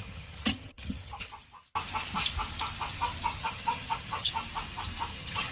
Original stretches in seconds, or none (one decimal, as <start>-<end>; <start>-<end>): 1.3-3.4; 4.3-5.1